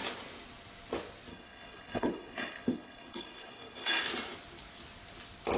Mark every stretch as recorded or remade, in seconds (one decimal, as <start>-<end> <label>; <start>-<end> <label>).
0.0-1.3 recorded; 1.3-4.0 remade; 4.0-5.6 recorded